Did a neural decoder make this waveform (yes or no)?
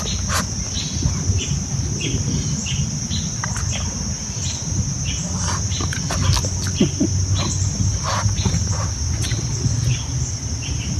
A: no